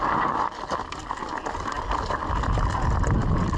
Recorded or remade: recorded